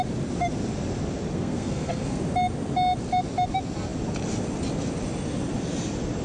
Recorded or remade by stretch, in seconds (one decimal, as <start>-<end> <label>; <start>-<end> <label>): 0.0-1.3 recorded; 1.3-2.2 remade; 2.2-6.2 recorded